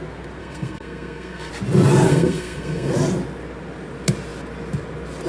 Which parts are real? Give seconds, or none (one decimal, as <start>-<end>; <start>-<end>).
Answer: 0.0-0.4; 1.5-2.1; 2.9-5.3